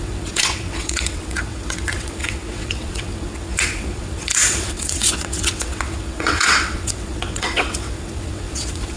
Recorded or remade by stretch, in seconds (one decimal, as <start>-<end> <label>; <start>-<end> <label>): 0.0-9.0 remade